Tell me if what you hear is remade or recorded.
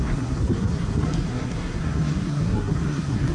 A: remade